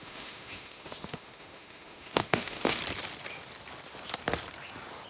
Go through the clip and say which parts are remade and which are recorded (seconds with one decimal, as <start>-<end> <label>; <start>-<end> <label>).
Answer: 0.0-2.8 remade; 2.8-5.1 recorded